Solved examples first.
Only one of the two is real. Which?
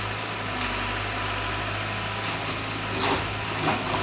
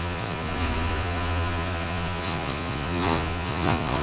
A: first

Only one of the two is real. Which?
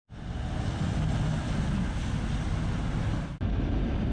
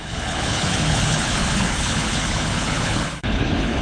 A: first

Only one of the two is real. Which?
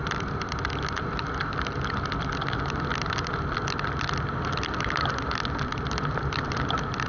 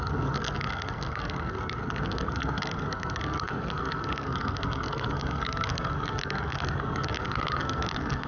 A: first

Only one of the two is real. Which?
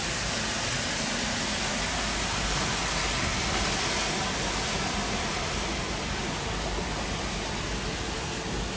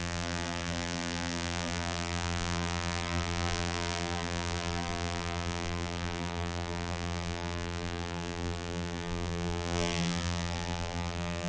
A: first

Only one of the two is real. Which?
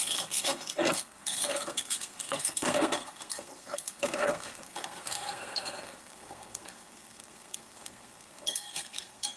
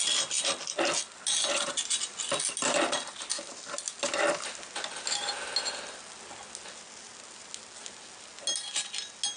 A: second